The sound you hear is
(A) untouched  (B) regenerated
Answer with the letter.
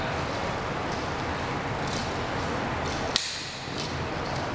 A